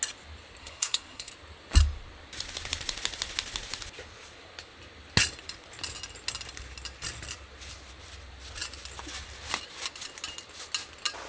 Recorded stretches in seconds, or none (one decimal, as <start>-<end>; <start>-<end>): 0.0-0.6; 1.3-11.3